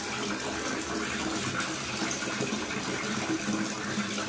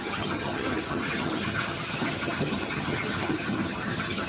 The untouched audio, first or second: first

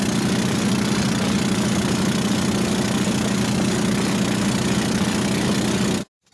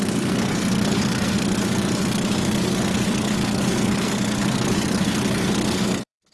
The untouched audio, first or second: first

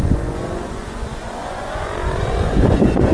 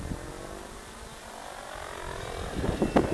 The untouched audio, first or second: second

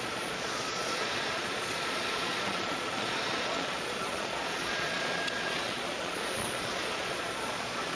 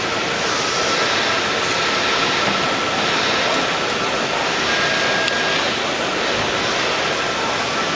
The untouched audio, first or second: second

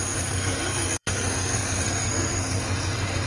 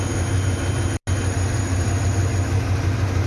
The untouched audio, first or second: second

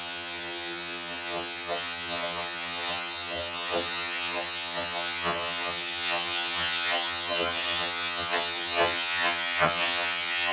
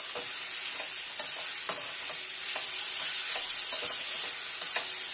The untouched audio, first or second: second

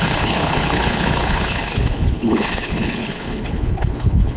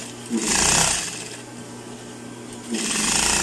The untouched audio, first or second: second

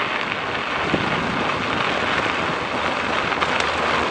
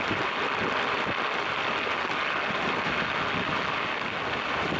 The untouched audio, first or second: first